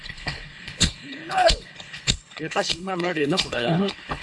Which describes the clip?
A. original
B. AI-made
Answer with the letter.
B